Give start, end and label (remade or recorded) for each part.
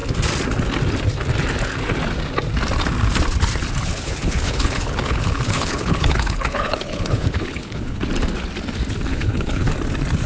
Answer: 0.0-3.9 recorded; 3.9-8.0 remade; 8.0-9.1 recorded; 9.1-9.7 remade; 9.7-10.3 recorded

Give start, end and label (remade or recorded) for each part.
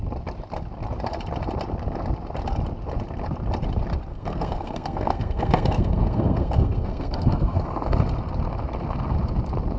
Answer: 0.0-4.1 recorded; 4.1-8.0 remade; 8.0-9.8 recorded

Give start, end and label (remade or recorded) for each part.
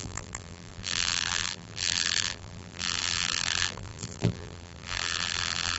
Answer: 0.0-5.8 remade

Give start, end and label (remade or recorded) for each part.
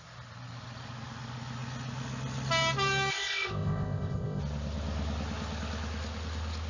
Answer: 0.0-3.1 recorded; 3.1-4.4 remade; 4.4-6.7 recorded